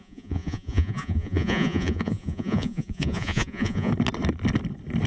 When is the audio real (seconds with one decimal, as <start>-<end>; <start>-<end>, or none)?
3.9-5.1